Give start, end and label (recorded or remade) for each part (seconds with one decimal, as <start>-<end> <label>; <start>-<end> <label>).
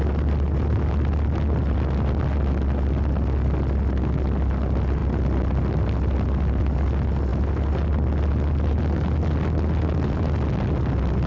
0.0-11.3 recorded